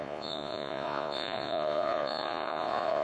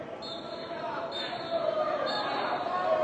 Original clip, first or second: second